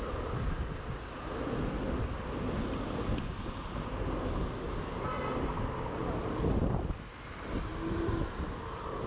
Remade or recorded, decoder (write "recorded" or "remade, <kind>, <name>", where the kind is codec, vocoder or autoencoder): recorded